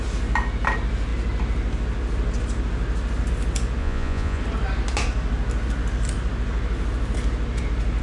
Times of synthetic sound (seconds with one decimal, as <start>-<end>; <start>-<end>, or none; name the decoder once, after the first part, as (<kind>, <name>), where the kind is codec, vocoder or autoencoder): 3.8-4.4 (vocoder, Vocos)